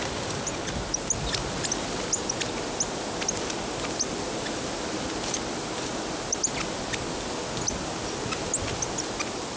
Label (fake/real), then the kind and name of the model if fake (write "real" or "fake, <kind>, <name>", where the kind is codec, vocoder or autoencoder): real